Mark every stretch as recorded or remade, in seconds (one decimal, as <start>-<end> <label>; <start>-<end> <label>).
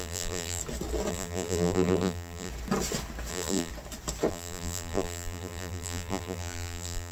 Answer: 0.0-0.6 remade; 0.6-1.1 recorded; 1.1-2.5 remade; 2.5-3.3 recorded; 3.3-3.7 remade; 3.7-4.3 recorded; 4.3-7.1 remade